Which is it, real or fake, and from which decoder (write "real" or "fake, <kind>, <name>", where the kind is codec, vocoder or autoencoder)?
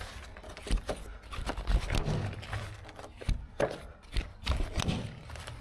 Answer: real